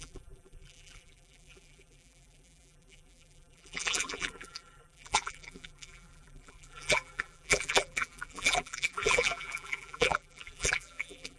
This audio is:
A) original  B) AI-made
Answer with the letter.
B